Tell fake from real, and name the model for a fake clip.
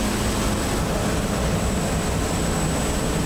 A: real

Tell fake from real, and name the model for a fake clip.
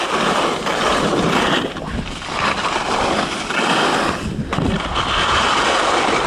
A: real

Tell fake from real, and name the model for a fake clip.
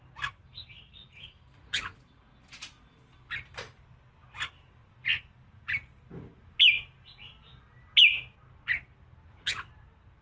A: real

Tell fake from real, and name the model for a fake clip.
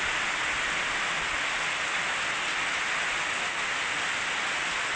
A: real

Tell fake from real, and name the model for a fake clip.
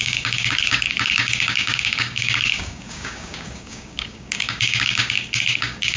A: fake, codec, DAC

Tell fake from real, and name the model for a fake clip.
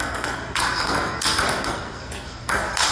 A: fake, codec, SNAC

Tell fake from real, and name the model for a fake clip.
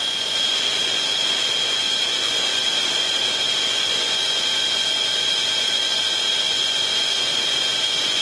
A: fake, vocoder, Vocos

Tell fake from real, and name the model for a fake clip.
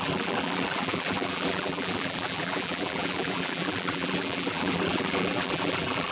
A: fake, vocoder, BigVGAN v2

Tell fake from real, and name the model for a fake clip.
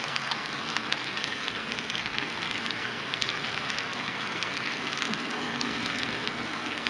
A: fake, codec, SNAC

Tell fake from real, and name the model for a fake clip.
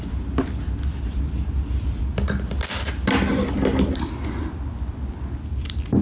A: real